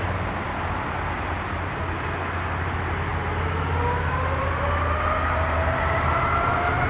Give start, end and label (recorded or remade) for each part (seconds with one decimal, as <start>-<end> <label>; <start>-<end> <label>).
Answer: 0.0-6.9 recorded